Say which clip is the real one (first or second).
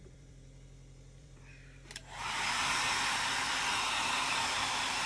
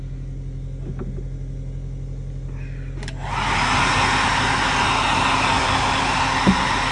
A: second